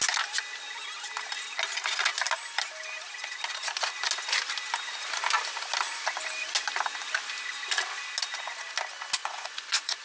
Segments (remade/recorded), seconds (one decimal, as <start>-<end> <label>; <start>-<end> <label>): 0.0-9.2 recorded; 9.2-10.0 remade